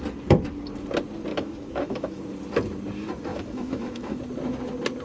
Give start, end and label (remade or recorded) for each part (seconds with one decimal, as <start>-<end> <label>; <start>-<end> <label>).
0.0-1.3 recorded; 1.3-2.2 remade; 2.2-3.3 recorded; 3.3-4.2 remade; 4.2-5.0 recorded